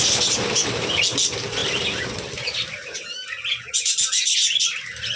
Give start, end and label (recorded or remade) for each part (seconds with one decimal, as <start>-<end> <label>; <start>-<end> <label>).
0.0-5.2 recorded